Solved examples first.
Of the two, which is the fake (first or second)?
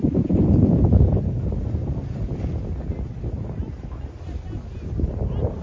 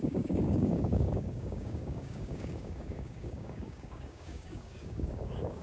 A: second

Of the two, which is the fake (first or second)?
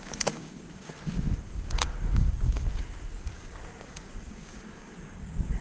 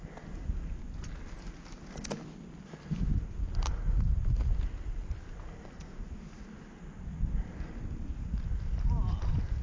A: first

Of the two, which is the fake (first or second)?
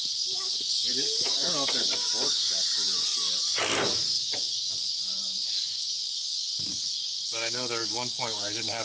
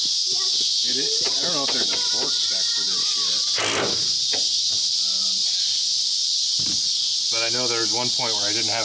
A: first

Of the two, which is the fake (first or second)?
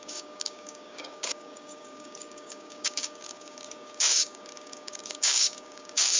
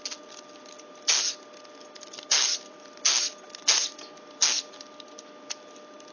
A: first